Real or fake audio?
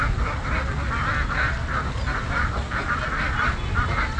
real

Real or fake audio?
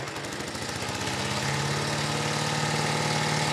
real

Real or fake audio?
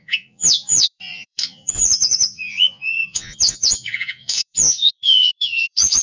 fake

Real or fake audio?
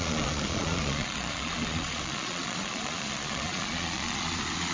fake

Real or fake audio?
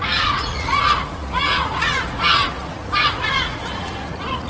fake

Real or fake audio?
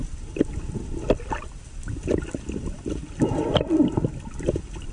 real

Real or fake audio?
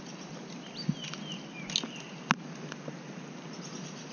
real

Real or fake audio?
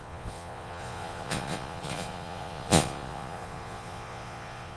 fake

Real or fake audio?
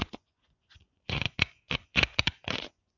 fake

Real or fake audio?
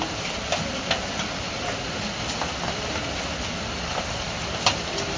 real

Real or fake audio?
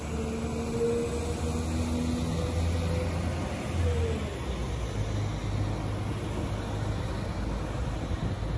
real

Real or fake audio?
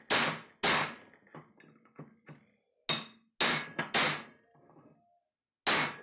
real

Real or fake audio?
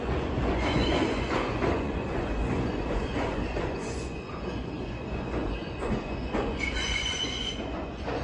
fake